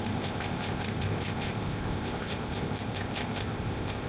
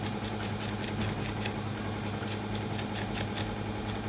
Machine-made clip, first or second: first